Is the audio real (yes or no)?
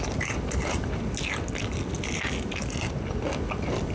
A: yes